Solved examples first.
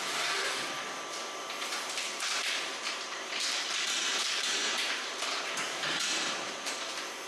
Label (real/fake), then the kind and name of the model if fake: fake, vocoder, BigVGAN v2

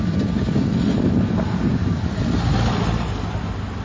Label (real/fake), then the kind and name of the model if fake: real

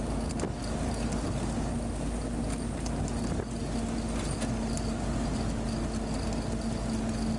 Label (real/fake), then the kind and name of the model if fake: real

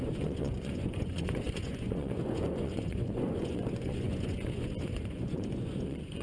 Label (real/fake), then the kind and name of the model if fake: fake, vocoder, Vocos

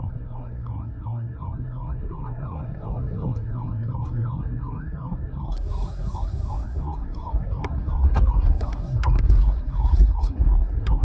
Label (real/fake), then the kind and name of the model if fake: fake, codec, SNAC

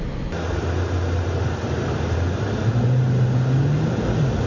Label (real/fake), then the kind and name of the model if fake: real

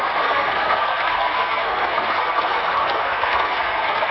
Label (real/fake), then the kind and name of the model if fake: fake, codec, SNAC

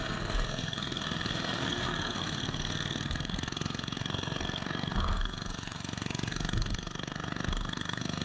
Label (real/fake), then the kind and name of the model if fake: fake, codec, SNAC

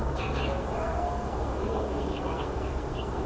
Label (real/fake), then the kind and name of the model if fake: fake, codec, SNAC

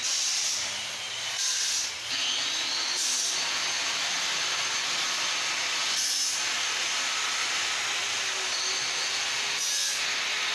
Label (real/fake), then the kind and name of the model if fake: real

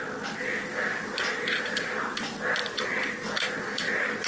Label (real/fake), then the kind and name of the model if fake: real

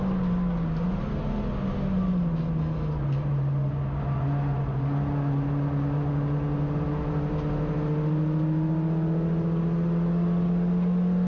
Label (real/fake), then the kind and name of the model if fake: real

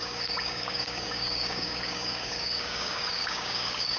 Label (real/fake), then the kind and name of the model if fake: fake, codec, DAC